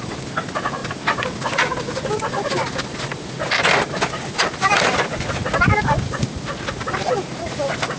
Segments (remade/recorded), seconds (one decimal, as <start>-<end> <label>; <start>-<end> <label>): 0.0-8.0 recorded